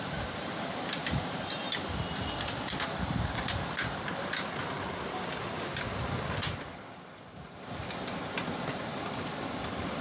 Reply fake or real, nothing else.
real